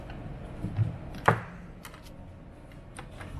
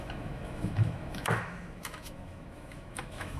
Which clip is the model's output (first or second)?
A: second